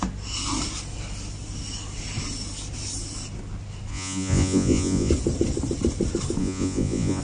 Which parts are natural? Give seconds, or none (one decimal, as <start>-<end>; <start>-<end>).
0.0-3.9; 5.1-6.4